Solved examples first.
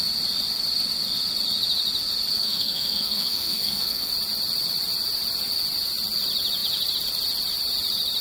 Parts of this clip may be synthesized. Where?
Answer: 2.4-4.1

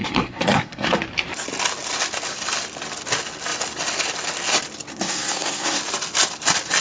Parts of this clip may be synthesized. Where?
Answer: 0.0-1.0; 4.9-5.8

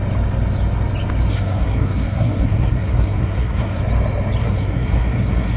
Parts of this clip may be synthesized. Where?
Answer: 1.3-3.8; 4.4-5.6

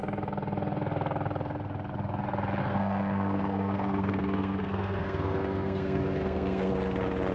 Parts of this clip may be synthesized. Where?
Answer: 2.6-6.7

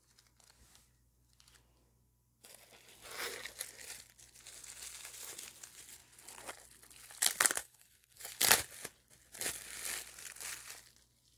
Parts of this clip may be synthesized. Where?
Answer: 7.6-8.2